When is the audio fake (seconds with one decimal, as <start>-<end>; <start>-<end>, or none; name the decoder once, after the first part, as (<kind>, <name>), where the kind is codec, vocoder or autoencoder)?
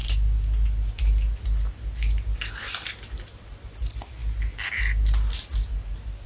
none